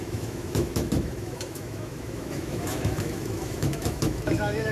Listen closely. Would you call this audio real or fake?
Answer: fake